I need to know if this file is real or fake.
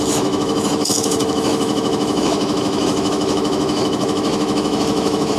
fake